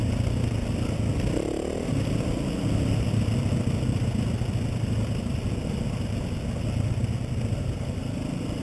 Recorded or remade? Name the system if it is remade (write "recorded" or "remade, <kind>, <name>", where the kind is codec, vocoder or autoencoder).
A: recorded